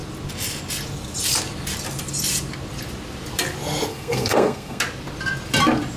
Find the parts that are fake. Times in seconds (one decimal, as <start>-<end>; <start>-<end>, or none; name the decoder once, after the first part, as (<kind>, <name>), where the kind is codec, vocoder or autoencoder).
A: 3.9-4.8 (codec, SNAC)